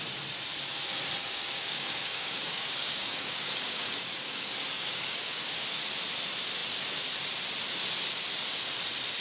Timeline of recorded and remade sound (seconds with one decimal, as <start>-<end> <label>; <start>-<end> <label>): 0.0-1.2 recorded; 1.2-5.5 remade; 5.5-9.2 recorded